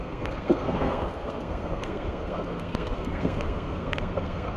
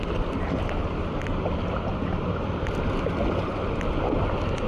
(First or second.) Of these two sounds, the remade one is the first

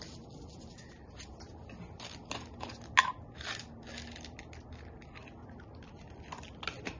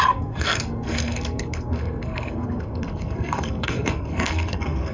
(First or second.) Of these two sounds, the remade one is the second